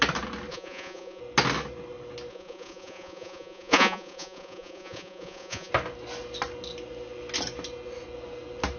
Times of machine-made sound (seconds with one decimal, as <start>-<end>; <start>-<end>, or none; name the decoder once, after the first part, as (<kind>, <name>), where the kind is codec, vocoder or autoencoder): 0.5-1.2 (vocoder, Vocos); 2.3-5.7